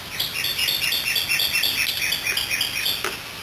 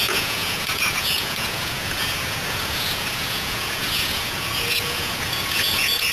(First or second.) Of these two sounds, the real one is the first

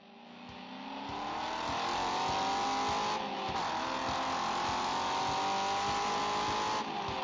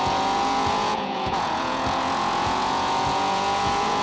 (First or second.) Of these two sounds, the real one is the first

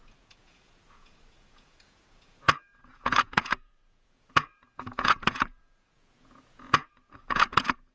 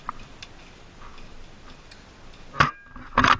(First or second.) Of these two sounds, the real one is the second